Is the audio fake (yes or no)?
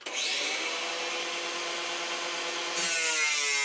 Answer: no